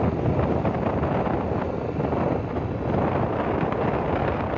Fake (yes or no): no